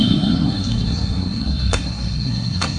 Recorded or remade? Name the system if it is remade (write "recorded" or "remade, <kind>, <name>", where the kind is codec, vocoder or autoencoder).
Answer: remade, codec, SNAC